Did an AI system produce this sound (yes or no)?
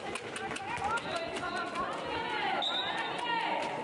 no